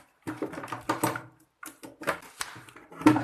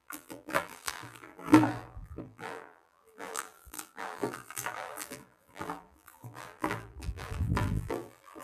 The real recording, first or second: first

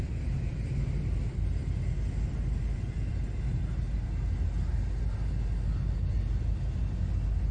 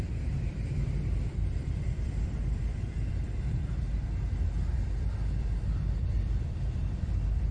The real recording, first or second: first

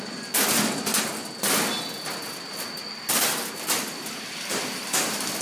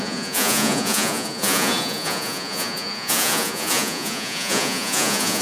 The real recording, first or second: first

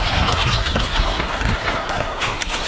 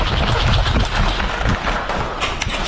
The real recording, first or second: second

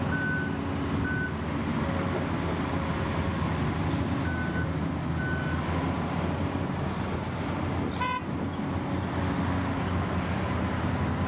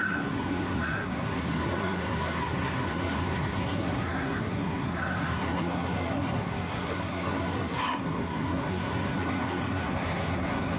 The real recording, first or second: first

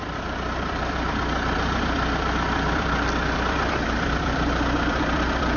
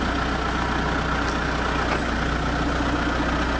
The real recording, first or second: second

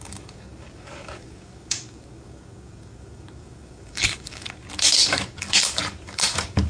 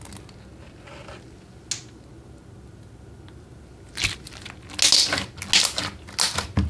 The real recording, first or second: second